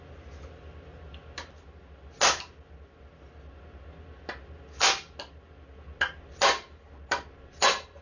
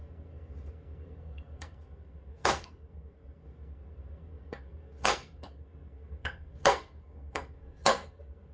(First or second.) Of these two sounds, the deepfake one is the second